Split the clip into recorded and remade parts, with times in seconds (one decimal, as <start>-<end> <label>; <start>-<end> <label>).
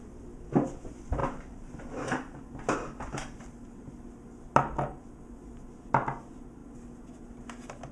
0.0-1.2 recorded; 1.2-3.4 remade; 3.4-7.9 recorded